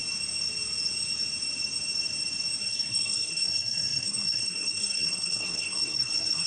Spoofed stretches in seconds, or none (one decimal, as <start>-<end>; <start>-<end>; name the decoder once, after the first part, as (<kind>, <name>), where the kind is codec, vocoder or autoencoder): 2.6-6.5 (codec, SNAC)